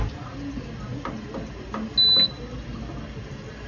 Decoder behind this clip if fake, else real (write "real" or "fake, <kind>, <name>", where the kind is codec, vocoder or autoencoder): real